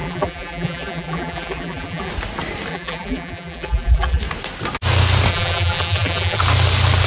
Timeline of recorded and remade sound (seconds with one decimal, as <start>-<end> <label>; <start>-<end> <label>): 0.0-2.1 remade; 2.1-2.7 recorded; 2.7-4.2 remade; 4.2-5.3 recorded; 5.3-6.4 remade; 6.4-7.1 recorded

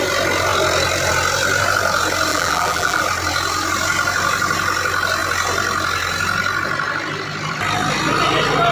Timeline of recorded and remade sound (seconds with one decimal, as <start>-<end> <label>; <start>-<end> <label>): 0.0-2.3 recorded; 2.3-3.0 remade; 3.0-8.7 recorded

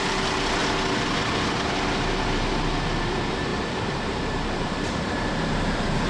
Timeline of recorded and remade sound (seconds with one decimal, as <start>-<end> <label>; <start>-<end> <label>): 0.0-3.5 recorded; 3.5-6.1 remade

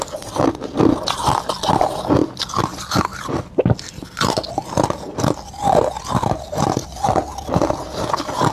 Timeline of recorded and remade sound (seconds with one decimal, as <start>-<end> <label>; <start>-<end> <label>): 0.0-8.5 recorded

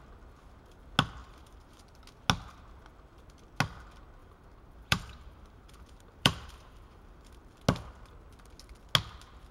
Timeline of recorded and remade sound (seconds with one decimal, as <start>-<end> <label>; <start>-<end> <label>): 0.0-1.2 recorded; 1.2-1.8 remade; 1.8-4.2 recorded; 4.2-7.6 remade; 7.6-9.5 recorded

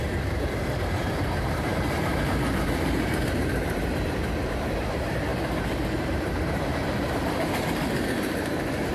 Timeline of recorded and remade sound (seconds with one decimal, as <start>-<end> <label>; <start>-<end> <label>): 0.0-8.9 remade